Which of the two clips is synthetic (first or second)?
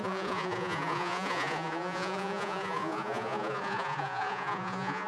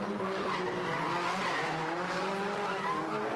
first